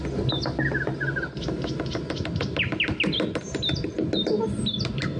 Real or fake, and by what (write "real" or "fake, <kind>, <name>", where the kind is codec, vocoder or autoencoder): real